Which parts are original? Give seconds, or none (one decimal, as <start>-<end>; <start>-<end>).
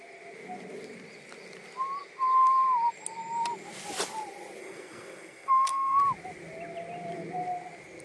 0.0-4.6; 6.0-8.0